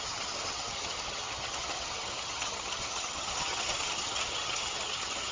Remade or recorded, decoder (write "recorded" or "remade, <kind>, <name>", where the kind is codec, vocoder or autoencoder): remade, vocoder, HiFi-GAN